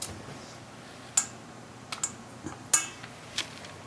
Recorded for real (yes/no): yes